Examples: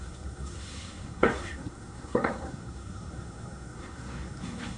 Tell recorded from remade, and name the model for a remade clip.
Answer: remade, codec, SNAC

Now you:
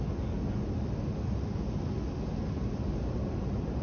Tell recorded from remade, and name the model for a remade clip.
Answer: recorded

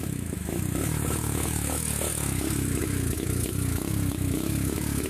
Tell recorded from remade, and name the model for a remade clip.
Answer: remade, autoencoder, DAC-VAE